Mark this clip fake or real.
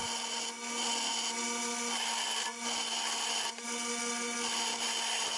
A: real